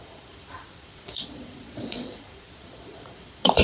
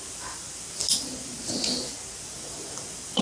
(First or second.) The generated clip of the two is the first